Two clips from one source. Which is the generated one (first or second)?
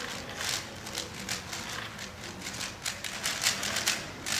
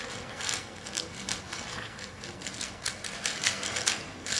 second